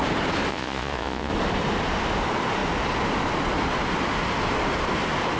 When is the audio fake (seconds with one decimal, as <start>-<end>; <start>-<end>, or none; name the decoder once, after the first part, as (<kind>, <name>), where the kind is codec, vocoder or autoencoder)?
0.5-1.3 (vocoder, Vocos)